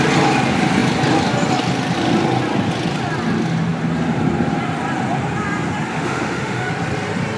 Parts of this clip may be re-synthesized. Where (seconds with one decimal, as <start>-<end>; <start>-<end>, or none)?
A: 5.9-6.7